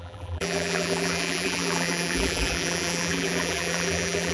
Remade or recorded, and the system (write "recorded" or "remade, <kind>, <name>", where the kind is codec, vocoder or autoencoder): remade, vocoder, BigVGAN v2